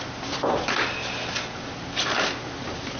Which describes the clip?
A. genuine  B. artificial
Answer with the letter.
A